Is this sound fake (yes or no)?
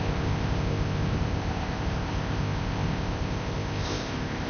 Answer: yes